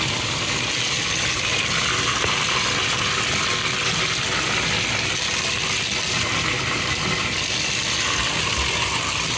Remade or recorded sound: recorded